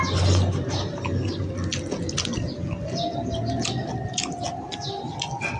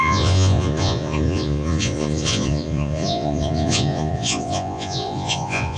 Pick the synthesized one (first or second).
second